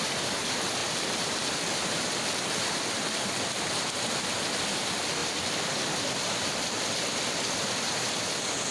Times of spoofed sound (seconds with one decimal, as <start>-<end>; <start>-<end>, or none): 0.8-4.2; 5.2-8.0